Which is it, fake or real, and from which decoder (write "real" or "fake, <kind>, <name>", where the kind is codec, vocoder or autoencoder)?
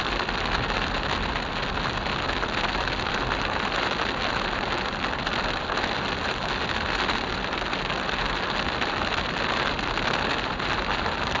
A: real